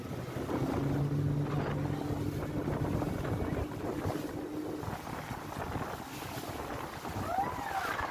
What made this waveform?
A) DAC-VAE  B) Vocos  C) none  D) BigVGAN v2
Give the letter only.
C